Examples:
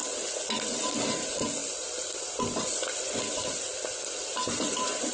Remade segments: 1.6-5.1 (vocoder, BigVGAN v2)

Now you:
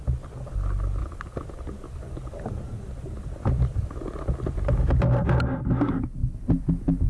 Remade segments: 1.0-4.5 (vocoder, BigVGAN v2); 6.2-7.1

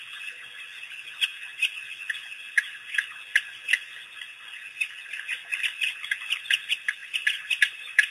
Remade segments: 7.0-8.1 (vocoder, BigVGAN v2)

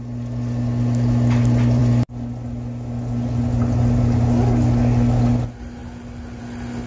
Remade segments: none

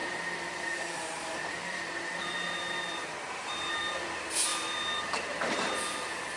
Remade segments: 0.0-6.4 (vocoder, BigVGAN v2)

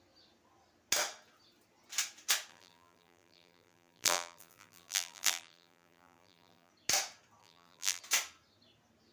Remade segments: 2.5-6.7 (vocoder, BigVGAN v2); 7.4-8.0

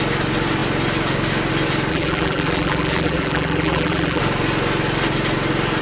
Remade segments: 1.9-4.2 (vocoder, BigVGAN v2)

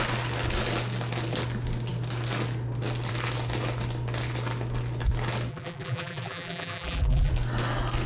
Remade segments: 5.5-7.3 (vocoder, BigVGAN v2)